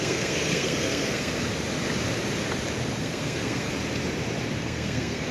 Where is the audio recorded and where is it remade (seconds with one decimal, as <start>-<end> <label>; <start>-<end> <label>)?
0.0-1.5 remade; 1.5-3.0 recorded; 3.0-3.7 remade; 3.7-4.6 recorded; 4.6-5.3 remade